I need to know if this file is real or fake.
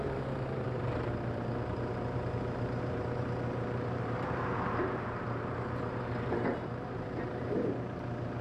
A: fake